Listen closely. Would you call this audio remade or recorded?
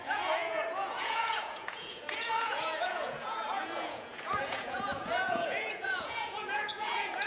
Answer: remade